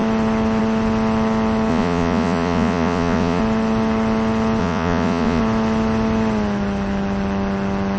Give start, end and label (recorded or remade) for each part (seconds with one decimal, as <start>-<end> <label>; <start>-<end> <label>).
0.0-1.7 recorded; 1.7-3.4 remade; 3.4-4.6 recorded; 4.6-5.4 remade; 5.4-8.0 recorded